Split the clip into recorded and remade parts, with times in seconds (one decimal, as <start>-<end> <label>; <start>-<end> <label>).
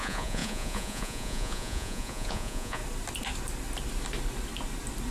0.0-2.8 remade; 2.8-5.1 recorded